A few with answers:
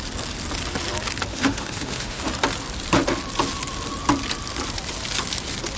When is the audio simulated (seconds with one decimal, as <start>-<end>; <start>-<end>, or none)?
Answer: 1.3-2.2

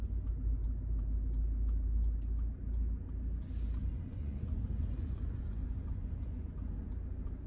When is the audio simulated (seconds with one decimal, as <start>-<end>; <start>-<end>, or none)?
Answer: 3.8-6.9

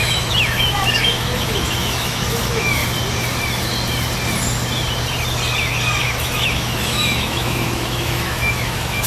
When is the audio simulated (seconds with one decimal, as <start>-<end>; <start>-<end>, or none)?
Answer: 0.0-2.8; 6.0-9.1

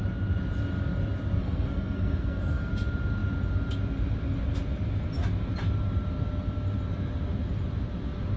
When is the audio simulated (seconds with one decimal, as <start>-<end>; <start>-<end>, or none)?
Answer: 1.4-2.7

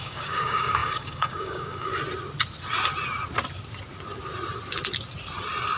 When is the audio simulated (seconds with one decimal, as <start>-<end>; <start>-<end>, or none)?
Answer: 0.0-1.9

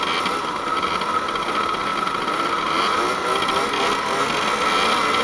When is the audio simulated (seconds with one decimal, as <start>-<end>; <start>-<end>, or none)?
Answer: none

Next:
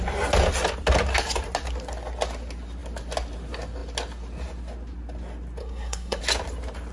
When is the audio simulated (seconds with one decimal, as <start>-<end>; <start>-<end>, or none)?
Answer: 5.6-6.2

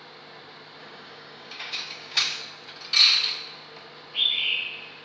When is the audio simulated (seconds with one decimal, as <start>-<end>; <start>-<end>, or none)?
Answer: 0.8-2.4